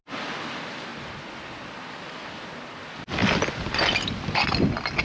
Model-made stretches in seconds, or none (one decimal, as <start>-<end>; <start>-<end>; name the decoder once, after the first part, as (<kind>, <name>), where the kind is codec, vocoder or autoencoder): none